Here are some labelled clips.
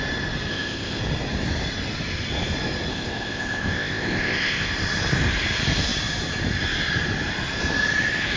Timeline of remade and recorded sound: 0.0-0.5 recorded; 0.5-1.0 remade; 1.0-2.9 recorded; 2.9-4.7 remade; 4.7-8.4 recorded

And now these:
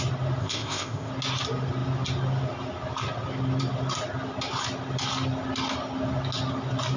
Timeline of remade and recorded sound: 0.0-0.4 recorded; 0.4-1.1 remade; 1.1-7.0 recorded

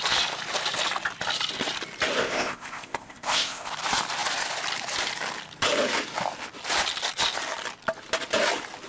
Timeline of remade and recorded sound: 0.0-2.2 recorded; 2.2-3.7 remade; 3.7-8.9 recorded

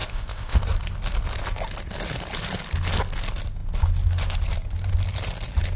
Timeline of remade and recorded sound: 0.0-0.6 remade; 0.6-5.8 recorded

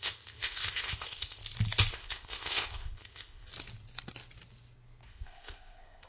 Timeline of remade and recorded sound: 0.0-1.4 remade; 1.4-1.9 recorded; 1.9-3.5 remade; 3.5-5.1 recorded; 5.1-6.1 remade

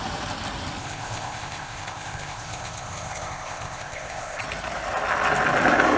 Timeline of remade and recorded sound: 0.0-0.8 recorded; 0.8-4.4 remade; 4.4-6.0 recorded

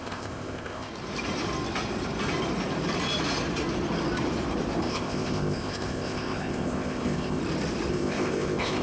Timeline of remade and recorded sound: 0.0-0.9 remade; 0.9-4.8 recorded; 4.8-7.4 remade; 7.4-7.9 recorded; 7.9-8.8 remade

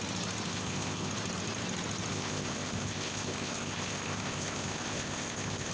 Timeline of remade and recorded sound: 0.0-0.5 recorded; 0.5-1.1 remade; 1.1-2.1 recorded; 2.1-5.7 remade